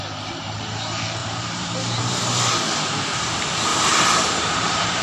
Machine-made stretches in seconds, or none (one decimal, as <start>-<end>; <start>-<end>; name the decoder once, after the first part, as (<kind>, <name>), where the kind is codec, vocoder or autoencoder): 1.2-2.7 (vocoder, BigVGAN v2); 3.7-5.0